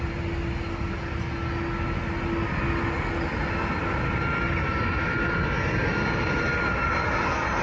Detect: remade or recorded recorded